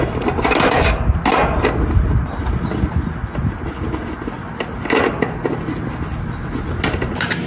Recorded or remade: recorded